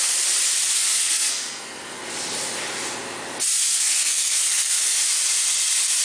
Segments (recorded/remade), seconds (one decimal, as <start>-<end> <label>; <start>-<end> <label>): 0.0-0.7 recorded; 0.7-2.0 remade; 2.0-3.6 recorded; 3.6-5.0 remade; 5.0-6.0 recorded